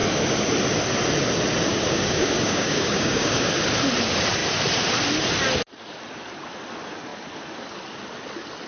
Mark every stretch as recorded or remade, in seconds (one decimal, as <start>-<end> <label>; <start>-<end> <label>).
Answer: 0.0-1.7 recorded; 1.7-3.5 remade; 3.5-8.7 recorded